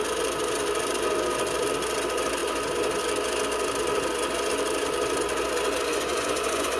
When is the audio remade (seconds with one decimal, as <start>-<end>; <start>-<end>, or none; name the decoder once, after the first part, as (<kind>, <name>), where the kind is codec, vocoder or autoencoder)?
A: 5.9-6.8 (vocoder, Vocos)